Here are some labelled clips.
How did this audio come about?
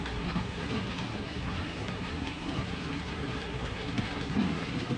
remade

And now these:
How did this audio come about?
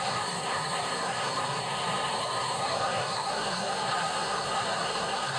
remade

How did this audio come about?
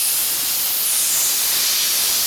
recorded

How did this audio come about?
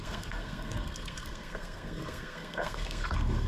remade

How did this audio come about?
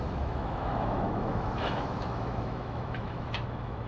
remade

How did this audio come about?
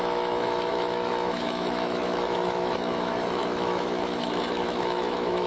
remade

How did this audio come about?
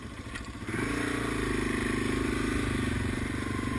recorded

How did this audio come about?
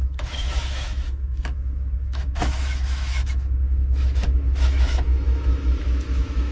remade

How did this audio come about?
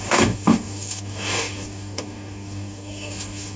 remade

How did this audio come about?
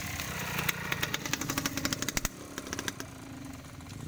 recorded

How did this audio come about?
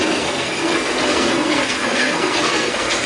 remade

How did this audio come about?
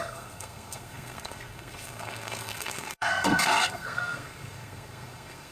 remade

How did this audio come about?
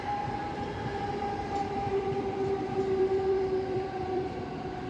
remade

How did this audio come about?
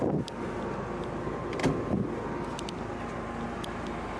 recorded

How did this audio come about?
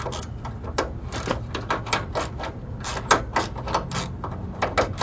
recorded